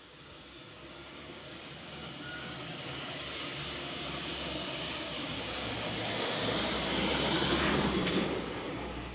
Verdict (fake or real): fake